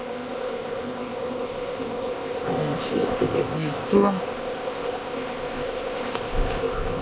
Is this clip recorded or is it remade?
remade